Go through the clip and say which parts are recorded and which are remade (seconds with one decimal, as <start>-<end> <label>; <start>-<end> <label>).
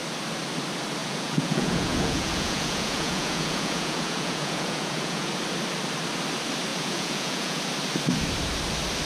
0.0-1.0 recorded; 1.0-5.3 remade; 5.3-6.7 recorded; 6.7-7.6 remade; 7.6-9.1 recorded